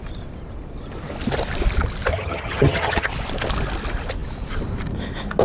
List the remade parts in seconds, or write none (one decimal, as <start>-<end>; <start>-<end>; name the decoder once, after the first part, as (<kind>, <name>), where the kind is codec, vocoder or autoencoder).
2.1-3.1 (vocoder, HiFi-GAN)